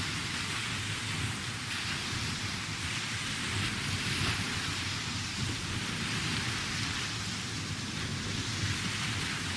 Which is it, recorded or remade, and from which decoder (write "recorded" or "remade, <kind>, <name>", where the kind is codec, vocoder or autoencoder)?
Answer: recorded